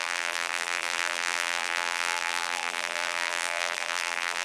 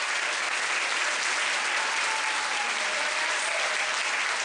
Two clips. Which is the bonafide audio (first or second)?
second